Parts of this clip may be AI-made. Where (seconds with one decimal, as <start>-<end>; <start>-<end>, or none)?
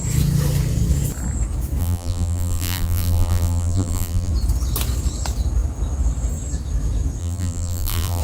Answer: 1.8-4.3; 7.2-8.2